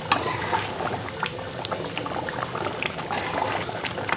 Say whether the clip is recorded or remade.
recorded